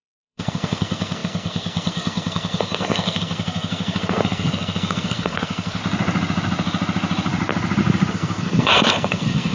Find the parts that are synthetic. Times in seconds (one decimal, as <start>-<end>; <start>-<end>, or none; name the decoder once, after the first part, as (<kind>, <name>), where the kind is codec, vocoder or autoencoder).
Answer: 0.0-5.8 (codec, SNAC); 8.1-9.5